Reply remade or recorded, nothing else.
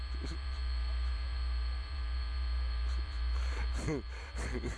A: remade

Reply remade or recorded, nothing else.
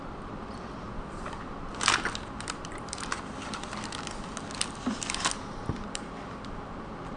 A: remade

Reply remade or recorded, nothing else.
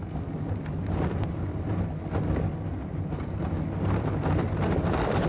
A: recorded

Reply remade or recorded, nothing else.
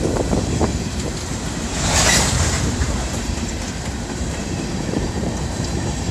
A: remade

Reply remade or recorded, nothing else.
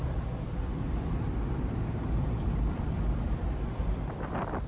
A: remade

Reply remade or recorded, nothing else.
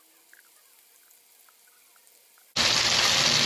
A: recorded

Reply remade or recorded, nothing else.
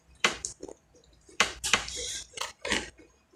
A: remade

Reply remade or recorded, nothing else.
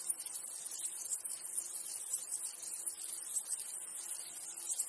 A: remade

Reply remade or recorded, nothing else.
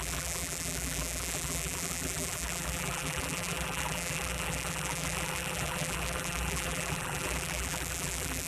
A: remade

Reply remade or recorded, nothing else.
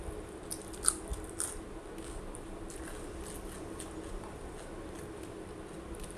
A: recorded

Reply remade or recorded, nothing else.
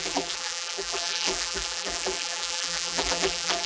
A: remade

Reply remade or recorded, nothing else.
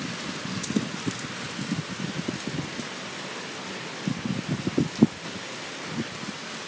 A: recorded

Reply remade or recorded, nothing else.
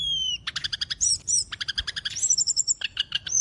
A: remade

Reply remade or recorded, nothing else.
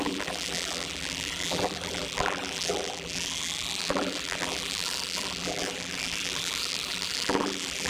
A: remade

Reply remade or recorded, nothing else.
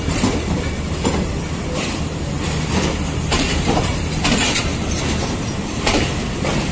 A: remade